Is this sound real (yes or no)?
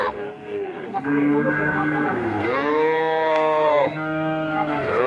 no